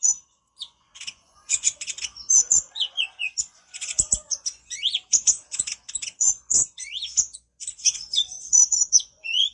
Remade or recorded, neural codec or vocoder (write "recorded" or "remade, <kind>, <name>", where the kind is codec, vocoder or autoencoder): remade, vocoder, Vocos